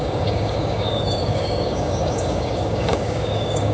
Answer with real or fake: fake